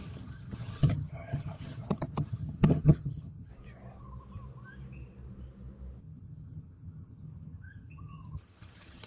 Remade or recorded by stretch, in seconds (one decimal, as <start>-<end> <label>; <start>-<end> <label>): 0.0-3.5 remade; 3.5-6.0 recorded; 6.0-9.1 remade